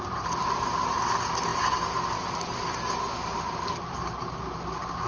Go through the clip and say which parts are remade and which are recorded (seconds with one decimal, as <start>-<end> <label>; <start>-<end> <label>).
0.0-5.1 recorded